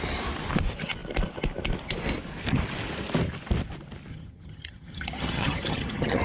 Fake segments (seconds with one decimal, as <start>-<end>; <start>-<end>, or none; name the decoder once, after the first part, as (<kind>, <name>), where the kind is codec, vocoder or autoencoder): 4.1-6.2 (vocoder, HiFi-GAN)

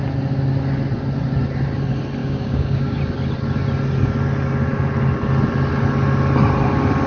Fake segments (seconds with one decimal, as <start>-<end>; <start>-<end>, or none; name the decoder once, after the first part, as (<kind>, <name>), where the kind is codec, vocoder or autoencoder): 2.2-3.0 (codec, DAC)

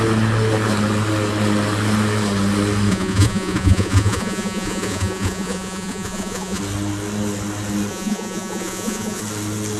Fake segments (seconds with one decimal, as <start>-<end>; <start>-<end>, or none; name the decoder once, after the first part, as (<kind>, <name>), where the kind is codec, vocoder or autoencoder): 2.9-6.6 (vocoder, Vocos); 7.9-9.2

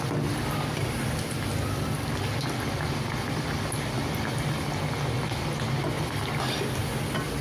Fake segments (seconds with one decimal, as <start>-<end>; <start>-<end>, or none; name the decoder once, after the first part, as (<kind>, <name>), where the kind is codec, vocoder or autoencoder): none

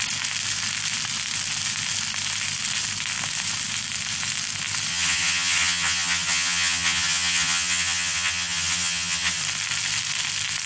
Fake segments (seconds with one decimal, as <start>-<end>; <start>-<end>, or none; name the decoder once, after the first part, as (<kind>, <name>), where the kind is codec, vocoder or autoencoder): 4.9-9.4 (vocoder, HiFi-GAN)

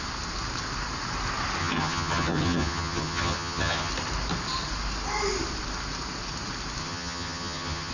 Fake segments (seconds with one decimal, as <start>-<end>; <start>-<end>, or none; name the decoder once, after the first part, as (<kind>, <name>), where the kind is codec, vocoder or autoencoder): 1.6-3.9 (vocoder, HiFi-GAN); 6.8-7.9

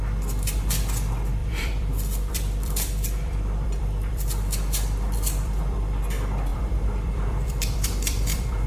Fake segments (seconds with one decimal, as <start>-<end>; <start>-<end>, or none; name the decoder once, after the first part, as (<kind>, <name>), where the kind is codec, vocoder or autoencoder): 1.4-6.0 (vocoder, BigVGAN v2); 6.5-8.7